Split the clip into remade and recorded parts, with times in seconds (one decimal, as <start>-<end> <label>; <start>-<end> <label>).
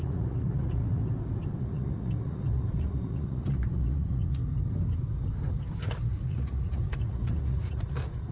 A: 0.0-1.0 remade; 1.0-1.6 recorded; 1.6-4.4 remade; 4.4-6.1 recorded; 6.1-8.3 remade